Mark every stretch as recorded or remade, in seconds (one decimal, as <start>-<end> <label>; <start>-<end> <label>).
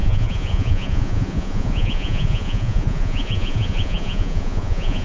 0.0-5.0 remade